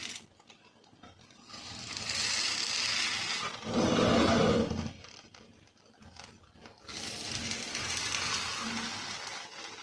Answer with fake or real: real